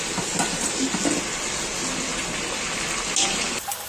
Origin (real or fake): real